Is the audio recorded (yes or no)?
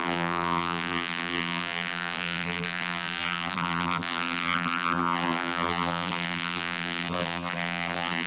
no